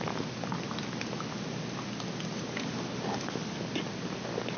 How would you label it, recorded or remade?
recorded